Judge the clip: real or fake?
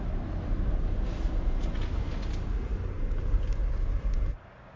real